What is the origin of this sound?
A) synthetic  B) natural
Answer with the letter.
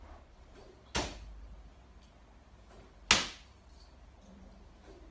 B